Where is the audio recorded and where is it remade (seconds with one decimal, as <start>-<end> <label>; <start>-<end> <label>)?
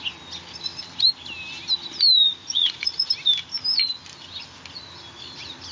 0.0-2.4 recorded; 2.4-3.1 remade; 3.1-5.7 recorded